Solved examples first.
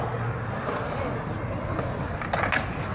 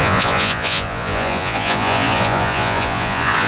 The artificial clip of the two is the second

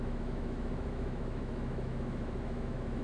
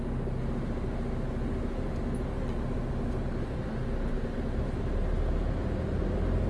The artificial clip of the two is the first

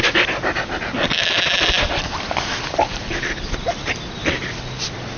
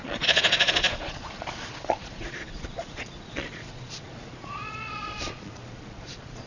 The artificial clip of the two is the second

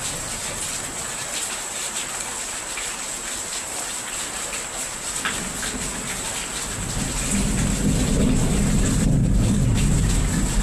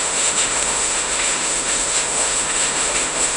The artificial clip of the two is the second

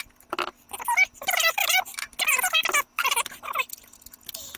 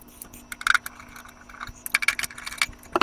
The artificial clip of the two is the first